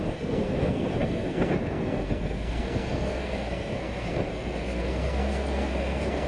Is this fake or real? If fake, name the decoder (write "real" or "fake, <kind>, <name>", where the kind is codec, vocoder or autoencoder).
fake, codec, SNAC